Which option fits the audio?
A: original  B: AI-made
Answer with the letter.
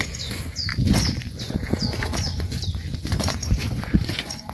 B